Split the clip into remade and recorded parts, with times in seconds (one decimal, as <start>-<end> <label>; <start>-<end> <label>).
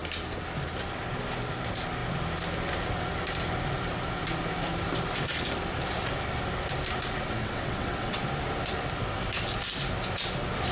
0.0-7.4 recorded; 7.4-8.2 remade; 8.2-10.7 recorded